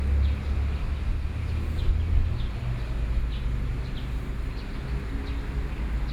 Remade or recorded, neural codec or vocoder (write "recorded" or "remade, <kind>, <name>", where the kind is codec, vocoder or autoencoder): recorded